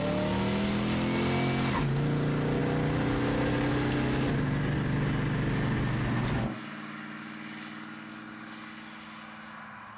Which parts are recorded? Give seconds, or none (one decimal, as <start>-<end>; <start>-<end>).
0.0-10.0